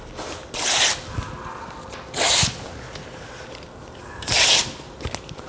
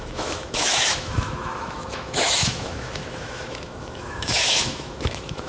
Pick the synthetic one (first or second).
second